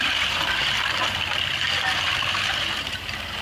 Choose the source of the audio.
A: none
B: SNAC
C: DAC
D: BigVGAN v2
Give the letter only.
A